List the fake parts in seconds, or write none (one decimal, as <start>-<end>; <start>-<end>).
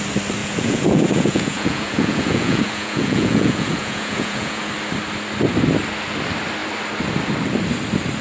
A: 0.4-4.7